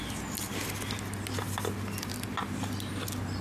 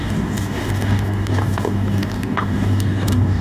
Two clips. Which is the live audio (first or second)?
first